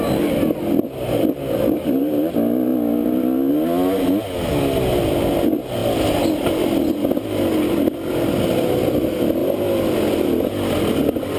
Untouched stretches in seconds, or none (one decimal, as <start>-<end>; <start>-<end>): 0.0-11.4